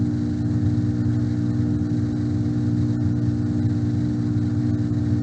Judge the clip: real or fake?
real